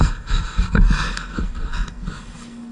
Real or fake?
fake